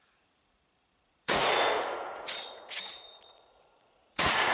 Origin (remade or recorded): remade